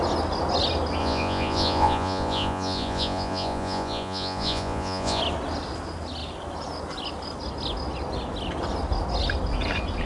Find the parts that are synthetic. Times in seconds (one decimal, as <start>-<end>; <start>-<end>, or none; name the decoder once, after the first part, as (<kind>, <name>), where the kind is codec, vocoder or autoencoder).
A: 1.0-5.2 (vocoder, Vocos)